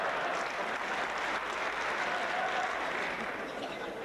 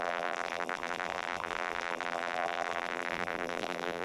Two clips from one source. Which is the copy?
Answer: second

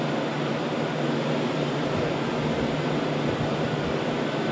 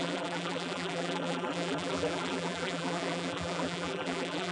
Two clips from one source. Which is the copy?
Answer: second